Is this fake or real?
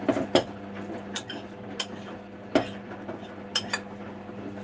real